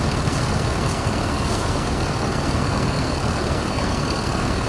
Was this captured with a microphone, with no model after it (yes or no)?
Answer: no